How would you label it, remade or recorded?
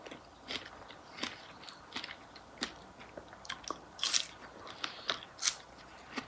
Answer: recorded